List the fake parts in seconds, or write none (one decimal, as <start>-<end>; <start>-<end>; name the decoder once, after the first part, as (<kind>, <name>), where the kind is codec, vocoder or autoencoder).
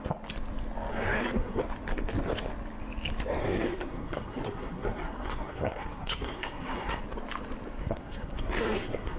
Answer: 0.9-1.6 (codec, SNAC); 3.4-7.0; 7.8-9.2